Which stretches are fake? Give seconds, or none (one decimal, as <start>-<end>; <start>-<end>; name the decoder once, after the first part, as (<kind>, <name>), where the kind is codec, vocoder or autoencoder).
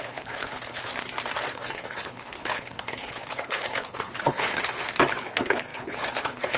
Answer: 0.0-0.9 (codec, HILCodec); 1.5-4.6; 5.2-6.6